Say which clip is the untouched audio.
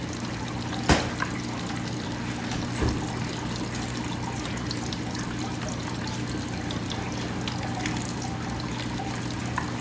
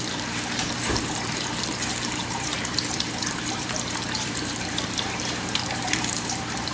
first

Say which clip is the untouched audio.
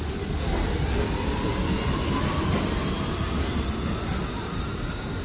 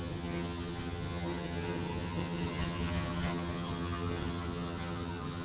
first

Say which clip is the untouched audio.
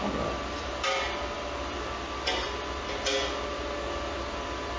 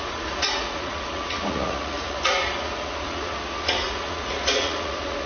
first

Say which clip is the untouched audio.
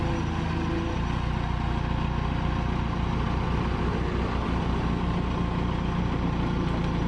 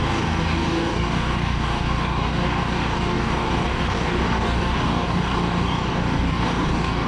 first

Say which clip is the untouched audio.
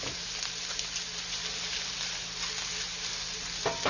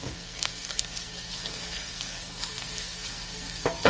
first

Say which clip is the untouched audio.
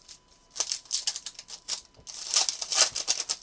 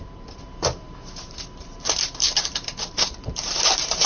first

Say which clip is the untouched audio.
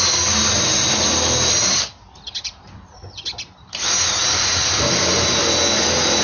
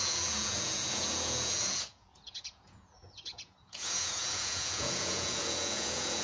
first